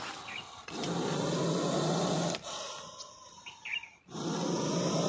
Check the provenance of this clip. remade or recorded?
recorded